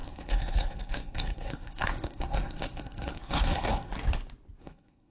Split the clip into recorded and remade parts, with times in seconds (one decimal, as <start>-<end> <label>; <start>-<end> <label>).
0.0-3.9 remade; 3.9-4.6 recorded; 4.6-5.1 remade

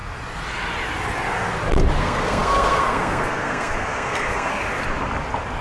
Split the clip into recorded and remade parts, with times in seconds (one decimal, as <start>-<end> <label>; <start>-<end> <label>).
0.0-2.0 recorded; 2.0-4.5 remade; 4.5-5.6 recorded

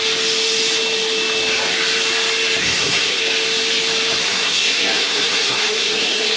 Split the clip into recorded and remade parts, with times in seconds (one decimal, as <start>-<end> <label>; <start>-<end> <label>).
0.0-2.6 recorded; 2.6-3.2 remade; 3.2-4.2 recorded; 4.2-6.4 remade

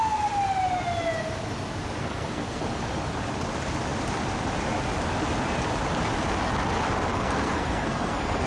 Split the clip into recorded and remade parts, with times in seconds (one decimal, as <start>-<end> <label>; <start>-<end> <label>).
0.0-2.0 recorded; 2.0-2.6 remade; 2.6-7.1 recorded; 7.1-8.5 remade

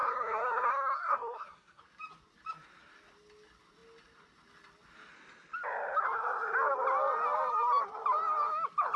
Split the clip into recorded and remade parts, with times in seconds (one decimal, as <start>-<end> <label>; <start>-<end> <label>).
0.0-1.8 remade; 1.8-9.0 recorded